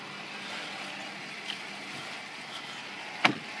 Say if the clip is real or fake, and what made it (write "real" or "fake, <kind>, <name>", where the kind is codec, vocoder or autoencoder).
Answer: real